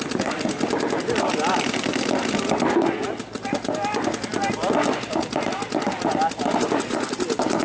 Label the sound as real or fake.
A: real